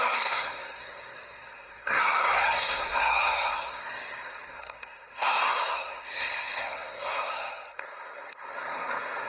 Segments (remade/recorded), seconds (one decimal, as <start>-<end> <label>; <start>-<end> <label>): 0.0-9.3 remade